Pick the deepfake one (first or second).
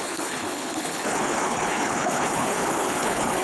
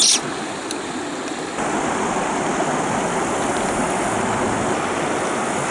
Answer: first